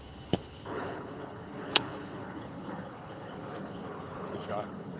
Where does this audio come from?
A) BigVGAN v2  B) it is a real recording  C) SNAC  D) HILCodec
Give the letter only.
D